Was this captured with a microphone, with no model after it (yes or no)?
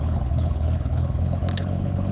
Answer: no